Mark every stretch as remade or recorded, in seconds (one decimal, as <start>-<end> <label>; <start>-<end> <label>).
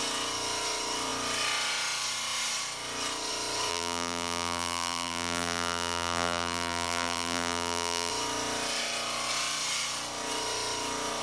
0.0-3.7 recorded; 3.7-8.1 remade; 8.1-11.2 recorded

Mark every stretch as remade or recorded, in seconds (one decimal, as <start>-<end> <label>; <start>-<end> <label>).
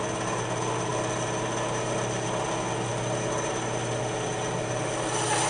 0.0-5.5 recorded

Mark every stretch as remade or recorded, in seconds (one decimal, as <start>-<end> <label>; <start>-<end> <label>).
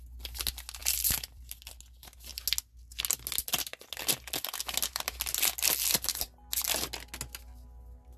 0.0-0.8 recorded; 0.8-1.7 remade; 1.7-8.2 recorded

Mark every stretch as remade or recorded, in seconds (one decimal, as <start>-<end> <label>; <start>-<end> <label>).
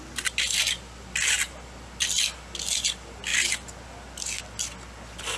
0.0-5.4 recorded